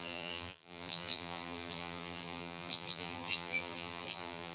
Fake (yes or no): yes